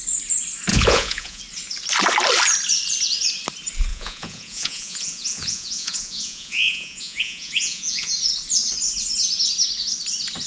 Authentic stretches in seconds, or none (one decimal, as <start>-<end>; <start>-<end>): 0.0-0.7; 1.4-3.9; 8.1-10.5